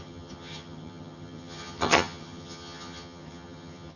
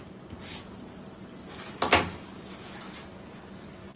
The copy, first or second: first